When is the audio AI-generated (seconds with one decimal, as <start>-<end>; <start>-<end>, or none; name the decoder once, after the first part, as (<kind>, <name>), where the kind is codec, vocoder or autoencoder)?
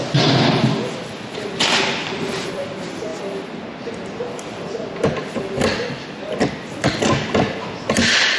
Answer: 2.0-2.6 (vocoder, BigVGAN v2)